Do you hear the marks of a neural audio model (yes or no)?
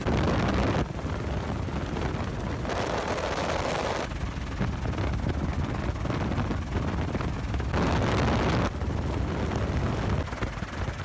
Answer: no